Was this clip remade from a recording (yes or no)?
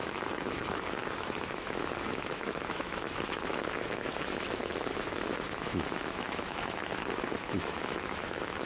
yes